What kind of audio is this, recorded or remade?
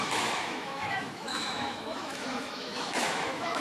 remade